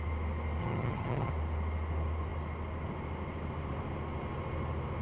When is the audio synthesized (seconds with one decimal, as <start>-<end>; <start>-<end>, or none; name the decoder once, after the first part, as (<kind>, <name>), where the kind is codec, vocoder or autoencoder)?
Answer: 0.6-1.3 (vocoder, HiFi-GAN)